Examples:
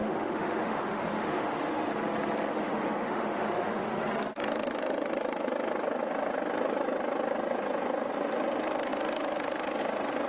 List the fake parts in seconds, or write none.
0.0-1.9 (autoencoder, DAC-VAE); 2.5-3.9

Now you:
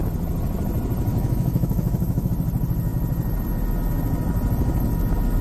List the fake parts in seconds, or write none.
1.1-2.3 (autoencoder, DAC-VAE)

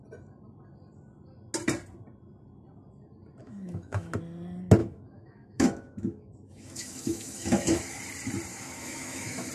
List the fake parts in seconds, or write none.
3.4-4.1 (autoencoder, DAC-VAE); 4.8-8.0; 8.5-9.5

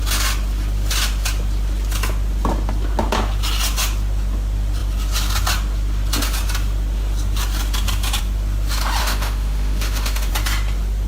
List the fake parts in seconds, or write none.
9.0-10.3 (autoencoder, DAC-VAE)

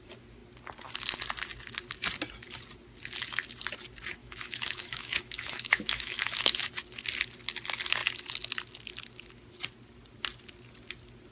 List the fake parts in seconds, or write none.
4.2-6.7 (autoencoder, DAC-VAE)